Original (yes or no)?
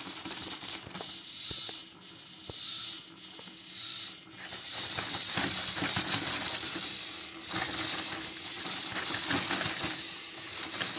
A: yes